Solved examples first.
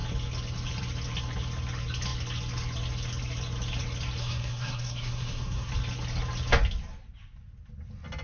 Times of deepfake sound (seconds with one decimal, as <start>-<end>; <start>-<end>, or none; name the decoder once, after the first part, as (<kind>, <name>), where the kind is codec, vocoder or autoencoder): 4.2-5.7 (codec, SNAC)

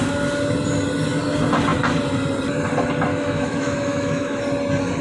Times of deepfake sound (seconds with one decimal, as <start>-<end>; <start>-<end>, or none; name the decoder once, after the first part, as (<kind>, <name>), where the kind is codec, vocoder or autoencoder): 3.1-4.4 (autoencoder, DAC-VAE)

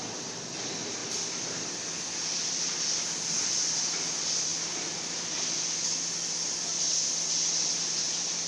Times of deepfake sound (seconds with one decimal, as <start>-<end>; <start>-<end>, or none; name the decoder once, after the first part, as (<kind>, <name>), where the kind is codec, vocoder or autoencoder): none

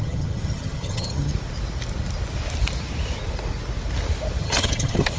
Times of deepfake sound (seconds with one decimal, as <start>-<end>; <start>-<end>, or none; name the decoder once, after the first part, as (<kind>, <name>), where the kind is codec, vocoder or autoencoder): 0.0-1.3 (vocoder, HiFi-GAN); 4.4-5.2

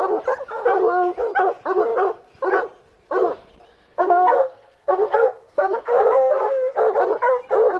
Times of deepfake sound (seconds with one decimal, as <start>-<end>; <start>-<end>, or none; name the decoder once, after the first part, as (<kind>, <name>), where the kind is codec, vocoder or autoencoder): 3.9-6.8 (codec, SNAC)

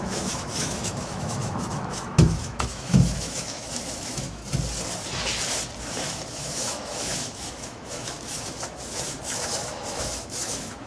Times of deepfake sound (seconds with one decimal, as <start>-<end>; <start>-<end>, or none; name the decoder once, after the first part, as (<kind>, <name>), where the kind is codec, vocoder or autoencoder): 0.0-4.4 (autoencoder, DAC-VAE); 5.8-10.9

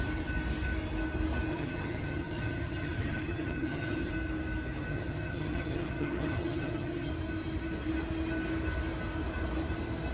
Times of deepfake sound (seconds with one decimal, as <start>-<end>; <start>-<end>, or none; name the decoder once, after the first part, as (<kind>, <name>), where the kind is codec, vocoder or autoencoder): 1.5-4.1 (vocoder, HiFi-GAN); 4.9-7.1

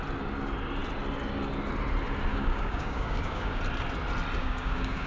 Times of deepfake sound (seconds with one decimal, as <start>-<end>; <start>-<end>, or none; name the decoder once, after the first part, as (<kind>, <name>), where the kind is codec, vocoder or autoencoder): 2.3-3.6 (codec, DAC); 4.4-5.1